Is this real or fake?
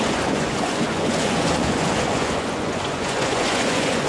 fake